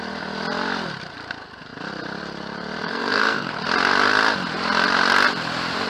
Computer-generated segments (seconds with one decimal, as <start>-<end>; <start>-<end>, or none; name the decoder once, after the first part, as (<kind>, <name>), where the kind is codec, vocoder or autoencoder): 2.8-3.5 (codec, SNAC)